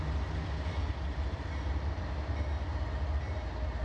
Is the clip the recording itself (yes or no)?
yes